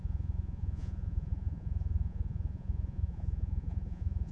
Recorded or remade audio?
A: remade